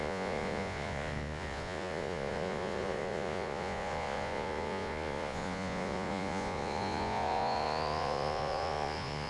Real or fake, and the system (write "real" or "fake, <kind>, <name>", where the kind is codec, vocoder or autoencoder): fake, vocoder, Vocos